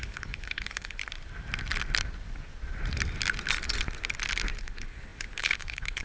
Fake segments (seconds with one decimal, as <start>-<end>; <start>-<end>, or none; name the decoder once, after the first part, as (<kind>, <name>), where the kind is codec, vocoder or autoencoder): 0.0-1.0 (codec, HILCodec); 4.6-6.0